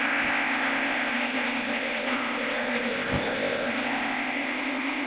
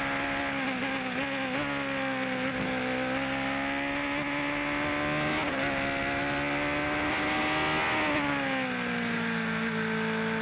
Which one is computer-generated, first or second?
first